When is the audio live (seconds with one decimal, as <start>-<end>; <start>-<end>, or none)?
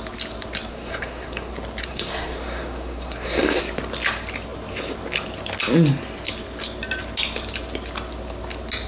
0.0-0.7; 1.5-1.9; 3.6-8.9